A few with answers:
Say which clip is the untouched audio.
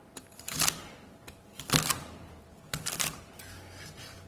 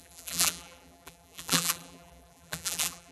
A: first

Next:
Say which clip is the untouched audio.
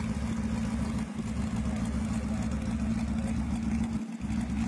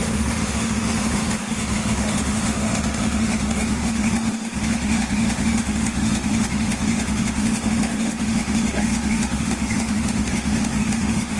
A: first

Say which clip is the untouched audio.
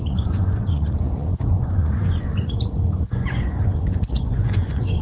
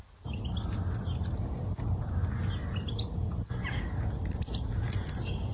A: second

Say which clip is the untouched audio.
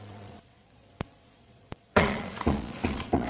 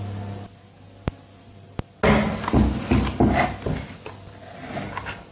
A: second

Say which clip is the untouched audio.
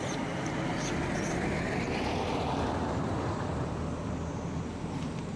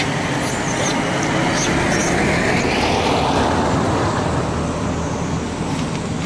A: second